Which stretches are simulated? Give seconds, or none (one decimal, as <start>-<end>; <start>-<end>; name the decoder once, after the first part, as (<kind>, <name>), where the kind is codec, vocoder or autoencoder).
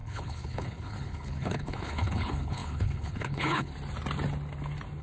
0.0-3.7 (codec, HILCodec)